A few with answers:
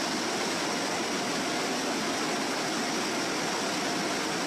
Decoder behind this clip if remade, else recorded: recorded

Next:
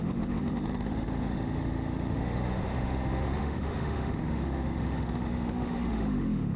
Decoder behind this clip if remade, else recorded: remade, autoencoder, DAC-VAE